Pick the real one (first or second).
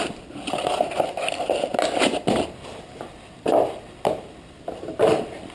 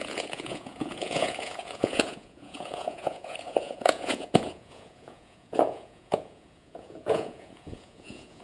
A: first